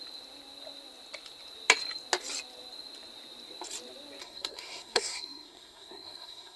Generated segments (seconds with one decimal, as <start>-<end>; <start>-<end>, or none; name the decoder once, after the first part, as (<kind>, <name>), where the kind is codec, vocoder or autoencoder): 4.2-6.6 (codec, SNAC)